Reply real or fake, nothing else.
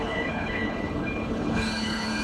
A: fake